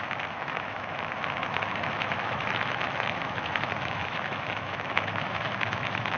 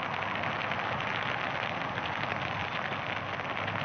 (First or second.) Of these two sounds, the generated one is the first